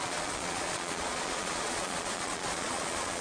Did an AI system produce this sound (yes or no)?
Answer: yes